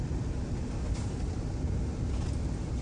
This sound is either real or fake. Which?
real